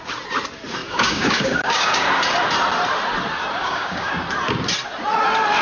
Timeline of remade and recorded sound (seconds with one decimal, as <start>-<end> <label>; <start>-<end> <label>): 0.0-0.8 recorded; 0.8-2.1 remade; 2.1-3.6 recorded; 3.6-4.1 remade; 4.1-5.6 recorded